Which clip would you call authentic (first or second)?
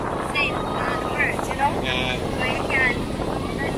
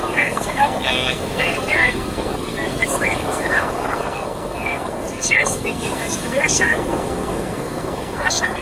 first